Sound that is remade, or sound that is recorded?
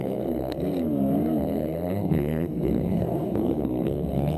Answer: remade